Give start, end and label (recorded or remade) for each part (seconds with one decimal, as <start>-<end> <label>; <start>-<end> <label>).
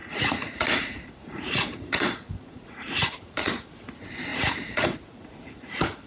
0.0-3.7 remade; 3.7-4.3 recorded; 4.3-6.1 remade